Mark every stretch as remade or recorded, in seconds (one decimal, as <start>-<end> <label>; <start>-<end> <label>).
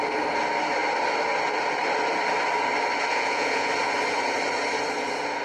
0.0-3.1 recorded; 3.1-3.7 remade; 3.7-5.4 recorded